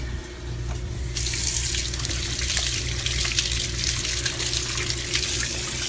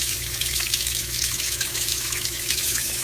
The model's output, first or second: second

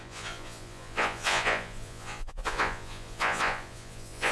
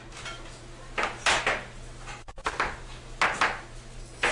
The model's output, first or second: first